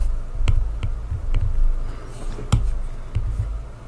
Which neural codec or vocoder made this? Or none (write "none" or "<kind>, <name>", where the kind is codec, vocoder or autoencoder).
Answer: none